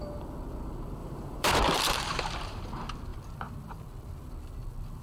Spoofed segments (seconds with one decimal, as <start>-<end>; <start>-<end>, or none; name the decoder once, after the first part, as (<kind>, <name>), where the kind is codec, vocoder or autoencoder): 1.0-2.6 (vocoder, BigVGAN v2)